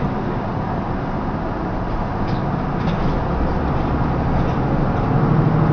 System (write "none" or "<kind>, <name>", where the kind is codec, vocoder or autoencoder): none